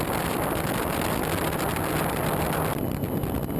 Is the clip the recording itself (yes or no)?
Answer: yes